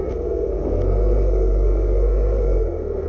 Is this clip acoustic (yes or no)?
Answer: no